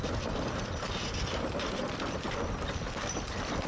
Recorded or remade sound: recorded